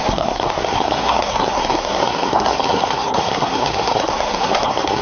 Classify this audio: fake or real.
fake